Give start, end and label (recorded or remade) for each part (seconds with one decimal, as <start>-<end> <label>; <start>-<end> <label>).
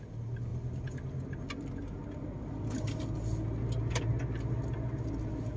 0.0-5.6 recorded